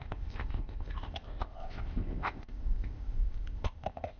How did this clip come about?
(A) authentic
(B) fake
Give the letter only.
B